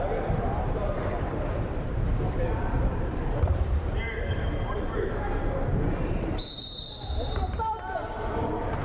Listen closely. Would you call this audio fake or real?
fake